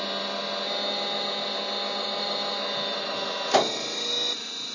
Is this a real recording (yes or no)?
yes